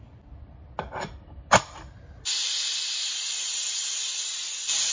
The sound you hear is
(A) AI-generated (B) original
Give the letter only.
B